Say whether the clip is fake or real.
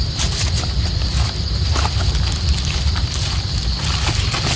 real